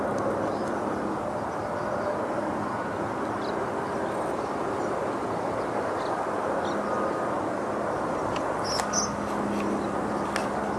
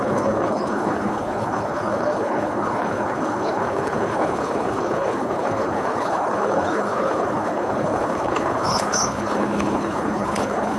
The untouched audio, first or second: first